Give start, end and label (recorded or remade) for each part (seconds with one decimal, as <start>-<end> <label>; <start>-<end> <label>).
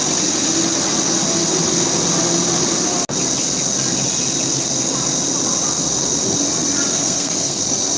0.0-6.9 recorded; 6.9-7.6 remade; 7.6-8.0 recorded